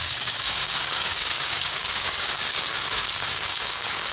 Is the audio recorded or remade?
remade